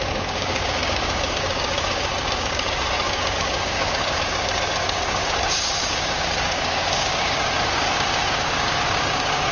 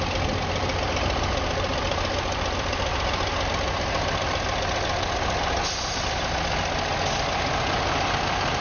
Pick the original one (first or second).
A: second